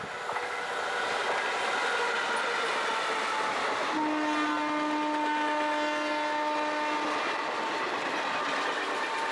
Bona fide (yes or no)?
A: yes